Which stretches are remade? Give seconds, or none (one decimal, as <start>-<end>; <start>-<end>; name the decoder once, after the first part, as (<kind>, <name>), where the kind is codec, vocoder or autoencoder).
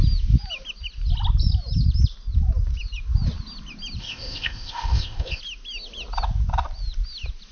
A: 4.0-5.4 (codec, ZipCodec)